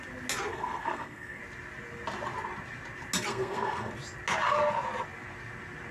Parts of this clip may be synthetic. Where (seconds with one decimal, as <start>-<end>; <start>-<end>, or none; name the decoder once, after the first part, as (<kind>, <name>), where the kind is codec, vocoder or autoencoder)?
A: 0.5-1.4 (codec, SNAC); 3.3-3.9